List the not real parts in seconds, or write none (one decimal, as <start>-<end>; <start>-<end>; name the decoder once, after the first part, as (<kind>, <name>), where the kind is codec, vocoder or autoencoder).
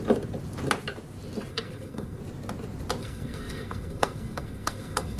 1.5-2.2 (codec, SNAC); 3.0-5.2